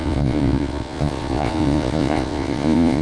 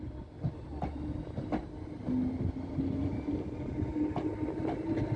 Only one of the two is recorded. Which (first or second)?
second